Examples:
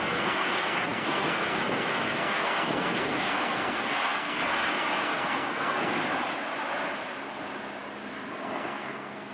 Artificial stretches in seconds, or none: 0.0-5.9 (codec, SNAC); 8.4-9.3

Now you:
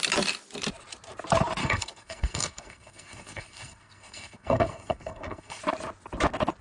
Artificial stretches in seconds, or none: 1.6-5.6 (codec, SNAC)

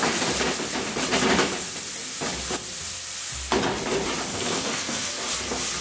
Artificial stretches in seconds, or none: 4.3-5.1 (codec, SNAC)

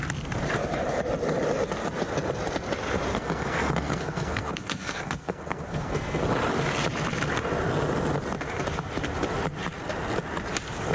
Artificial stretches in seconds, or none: 3.1-6.2 (codec, SNAC)

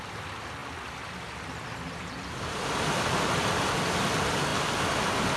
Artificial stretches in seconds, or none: none

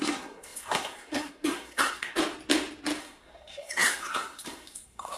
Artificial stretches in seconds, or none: 0.0-2.2 (codec, SNAC); 3.0-5.2